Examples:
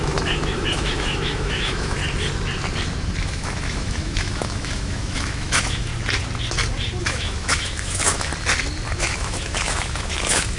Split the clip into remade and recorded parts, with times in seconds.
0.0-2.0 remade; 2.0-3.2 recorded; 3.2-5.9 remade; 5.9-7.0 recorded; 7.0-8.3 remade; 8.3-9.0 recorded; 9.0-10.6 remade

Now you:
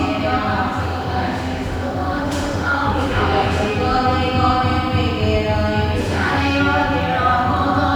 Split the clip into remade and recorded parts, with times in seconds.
0.0-0.8 recorded; 0.8-3.7 remade; 3.7-6.0 recorded; 6.0-6.6 remade; 6.6-8.0 recorded

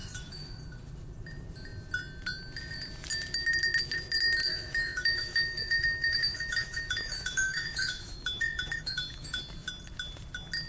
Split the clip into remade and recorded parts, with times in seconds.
0.0-0.6 remade; 0.6-4.5 recorded; 4.5-9.4 remade; 9.4-10.7 recorded

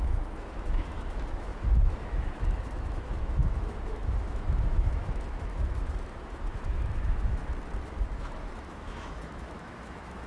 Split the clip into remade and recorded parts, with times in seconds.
0.0-7.4 remade; 7.4-8.0 recorded; 8.0-10.3 remade

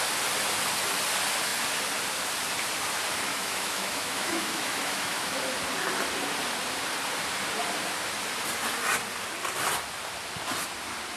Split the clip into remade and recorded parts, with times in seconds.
0.0-3.3 recorded; 3.3-5.4 remade; 5.4-11.2 recorded